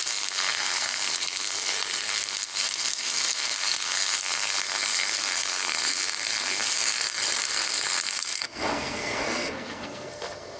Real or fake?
fake